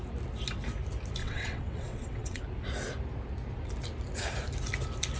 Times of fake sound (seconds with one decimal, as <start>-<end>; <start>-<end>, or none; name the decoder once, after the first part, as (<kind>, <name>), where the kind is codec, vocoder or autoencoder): 1.2-2.4 (vocoder, WaveNeXt)